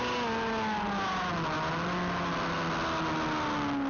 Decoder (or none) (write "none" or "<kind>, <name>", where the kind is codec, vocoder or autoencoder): none